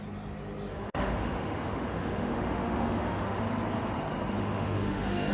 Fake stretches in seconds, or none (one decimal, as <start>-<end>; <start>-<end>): 0.7-3.4; 4.4-5.3